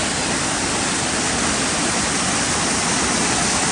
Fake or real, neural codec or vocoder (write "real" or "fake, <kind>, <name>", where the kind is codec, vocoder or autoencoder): real